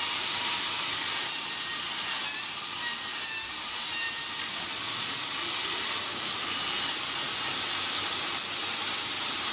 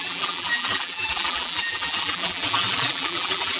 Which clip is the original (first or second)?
first